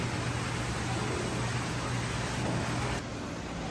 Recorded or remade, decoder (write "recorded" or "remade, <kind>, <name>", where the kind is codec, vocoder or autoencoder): recorded